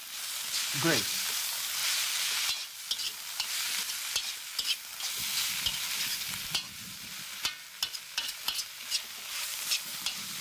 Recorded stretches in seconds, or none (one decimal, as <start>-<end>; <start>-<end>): 0.0-10.4